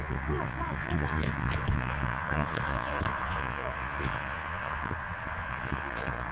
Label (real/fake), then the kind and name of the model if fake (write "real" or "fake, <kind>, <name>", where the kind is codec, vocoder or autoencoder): fake, vocoder, Vocos